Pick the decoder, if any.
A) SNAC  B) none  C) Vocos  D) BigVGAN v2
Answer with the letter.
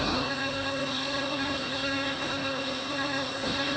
A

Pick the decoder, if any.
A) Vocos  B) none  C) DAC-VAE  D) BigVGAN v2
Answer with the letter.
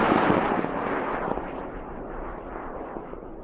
B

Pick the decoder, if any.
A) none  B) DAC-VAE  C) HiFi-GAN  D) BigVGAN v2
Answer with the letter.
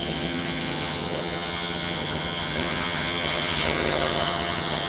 C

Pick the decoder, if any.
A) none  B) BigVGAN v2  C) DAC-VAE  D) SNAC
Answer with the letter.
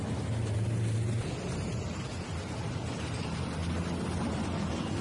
A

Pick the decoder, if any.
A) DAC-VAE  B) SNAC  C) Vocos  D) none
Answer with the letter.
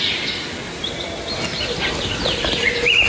D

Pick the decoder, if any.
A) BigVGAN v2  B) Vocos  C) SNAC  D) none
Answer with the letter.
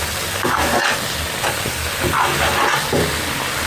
D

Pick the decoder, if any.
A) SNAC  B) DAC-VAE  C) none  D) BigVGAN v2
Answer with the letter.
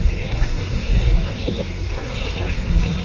A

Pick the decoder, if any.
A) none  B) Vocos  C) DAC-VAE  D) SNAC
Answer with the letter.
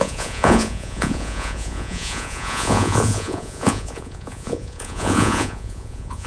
B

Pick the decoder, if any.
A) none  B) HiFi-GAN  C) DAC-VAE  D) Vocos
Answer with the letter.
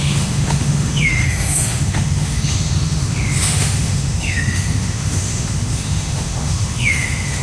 C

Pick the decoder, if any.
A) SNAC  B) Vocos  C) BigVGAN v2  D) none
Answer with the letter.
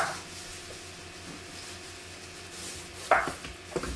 D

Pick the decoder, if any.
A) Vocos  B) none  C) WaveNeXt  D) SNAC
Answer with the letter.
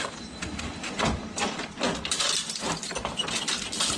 B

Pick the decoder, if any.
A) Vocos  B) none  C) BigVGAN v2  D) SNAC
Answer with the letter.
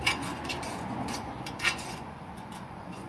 A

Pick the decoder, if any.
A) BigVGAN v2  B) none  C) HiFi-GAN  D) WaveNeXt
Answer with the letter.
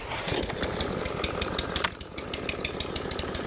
B